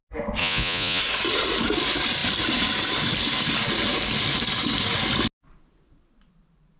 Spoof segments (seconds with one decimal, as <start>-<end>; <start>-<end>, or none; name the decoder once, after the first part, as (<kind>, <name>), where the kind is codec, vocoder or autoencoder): 0.4-1.0 (vocoder, Vocos)